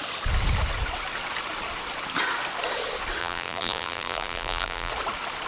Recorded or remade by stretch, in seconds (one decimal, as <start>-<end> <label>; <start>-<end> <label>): 0.0-3.2 recorded; 3.2-4.9 remade; 4.9-5.5 recorded